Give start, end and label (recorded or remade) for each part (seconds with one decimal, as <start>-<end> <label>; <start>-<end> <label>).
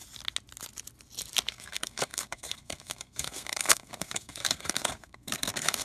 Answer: 0.0-1.5 recorded; 1.5-5.8 remade